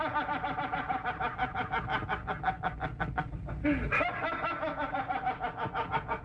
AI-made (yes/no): no